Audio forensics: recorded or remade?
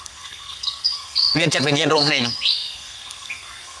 remade